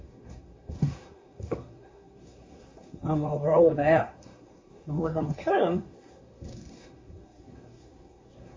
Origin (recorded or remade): remade